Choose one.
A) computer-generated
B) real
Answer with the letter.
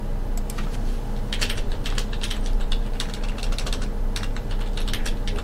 B